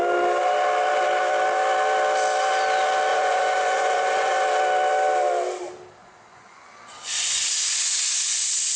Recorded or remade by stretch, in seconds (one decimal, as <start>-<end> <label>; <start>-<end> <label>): 0.0-3.1 recorded; 3.1-4.3 remade; 4.3-6.0 recorded; 6.0-7.9 remade; 7.9-8.8 recorded